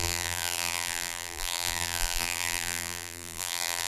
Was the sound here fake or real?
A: fake